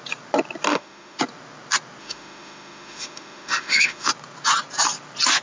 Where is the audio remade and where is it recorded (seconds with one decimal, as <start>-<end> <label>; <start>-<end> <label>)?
0.0-0.7 recorded; 0.7-1.2 remade; 1.2-2.0 recorded; 2.0-4.1 remade; 4.1-5.4 recorded